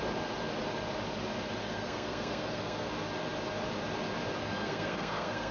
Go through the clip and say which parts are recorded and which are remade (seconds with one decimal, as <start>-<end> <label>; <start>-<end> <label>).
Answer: 0.0-1.6 recorded; 1.6-2.9 remade; 2.9-4.4 recorded; 4.4-5.5 remade